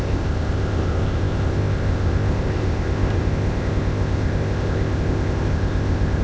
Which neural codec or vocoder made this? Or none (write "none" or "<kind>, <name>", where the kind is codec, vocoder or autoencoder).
codec, ZipCodec